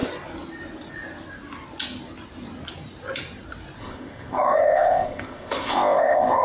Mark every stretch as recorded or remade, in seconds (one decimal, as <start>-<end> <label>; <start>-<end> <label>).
0.0-3.8 recorded; 3.8-6.4 remade